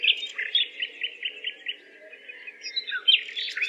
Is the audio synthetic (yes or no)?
no